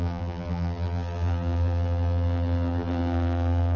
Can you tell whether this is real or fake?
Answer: fake